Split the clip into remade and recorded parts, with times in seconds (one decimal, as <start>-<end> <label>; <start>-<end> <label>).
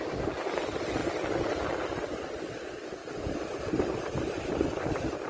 0.0-1.0 recorded; 1.0-1.8 remade; 1.8-3.0 recorded; 3.0-4.4 remade; 4.4-5.3 recorded